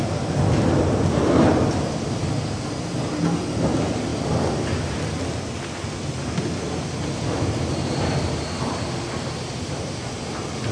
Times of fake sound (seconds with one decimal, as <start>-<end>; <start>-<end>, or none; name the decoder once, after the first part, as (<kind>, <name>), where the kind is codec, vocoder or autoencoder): none